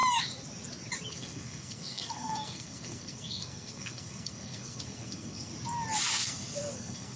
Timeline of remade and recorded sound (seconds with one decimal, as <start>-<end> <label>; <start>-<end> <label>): 0.0-1.1 recorded; 1.1-5.5 remade; 5.5-6.1 recorded; 6.1-7.2 remade